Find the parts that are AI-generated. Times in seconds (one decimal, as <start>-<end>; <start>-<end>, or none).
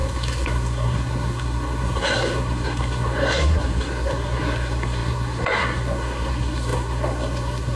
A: 0.0-7.8